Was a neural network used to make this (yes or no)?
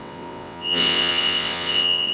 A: yes